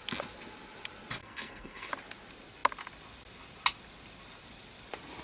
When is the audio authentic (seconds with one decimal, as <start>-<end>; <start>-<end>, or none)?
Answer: 0.0-1.2; 1.9-5.2